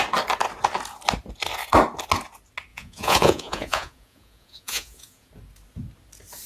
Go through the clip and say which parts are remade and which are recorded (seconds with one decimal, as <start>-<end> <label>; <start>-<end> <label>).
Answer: 0.0-2.7 recorded; 2.7-5.3 remade; 5.3-6.5 recorded